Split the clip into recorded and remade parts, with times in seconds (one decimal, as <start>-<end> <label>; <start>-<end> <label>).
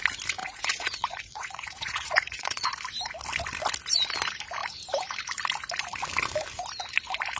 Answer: 0.0-0.4 recorded; 0.4-2.7 remade; 2.7-7.4 recorded